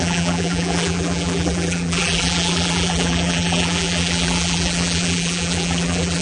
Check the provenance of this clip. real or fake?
fake